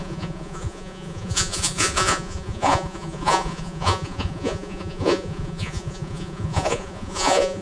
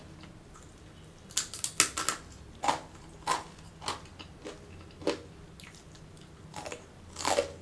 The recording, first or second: second